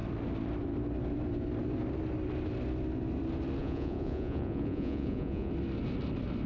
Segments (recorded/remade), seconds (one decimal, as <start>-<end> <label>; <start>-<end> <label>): 0.0-3.6 recorded; 3.6-5.5 remade; 5.5-6.5 recorded